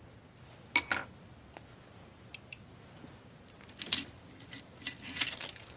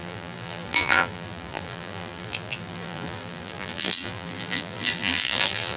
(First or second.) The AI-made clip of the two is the second